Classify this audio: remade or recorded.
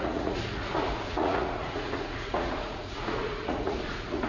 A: remade